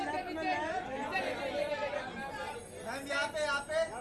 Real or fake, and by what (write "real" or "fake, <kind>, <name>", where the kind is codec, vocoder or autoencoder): real